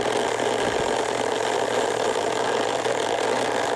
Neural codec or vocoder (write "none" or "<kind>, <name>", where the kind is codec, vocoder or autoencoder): none